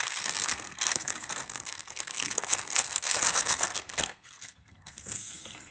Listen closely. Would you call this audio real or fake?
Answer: fake